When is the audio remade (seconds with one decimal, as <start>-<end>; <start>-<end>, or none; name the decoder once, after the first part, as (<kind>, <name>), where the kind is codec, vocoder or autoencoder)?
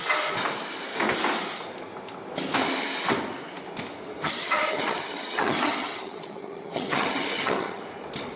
4.2-7.8 (vocoder, HiFi-GAN)